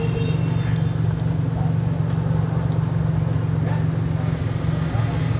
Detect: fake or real real